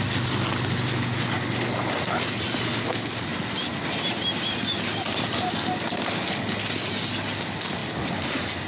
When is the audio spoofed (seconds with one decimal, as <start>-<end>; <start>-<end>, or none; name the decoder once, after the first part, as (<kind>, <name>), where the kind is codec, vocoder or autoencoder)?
none